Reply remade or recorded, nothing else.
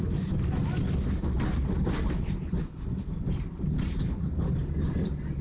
recorded